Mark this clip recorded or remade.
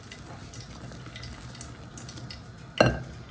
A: recorded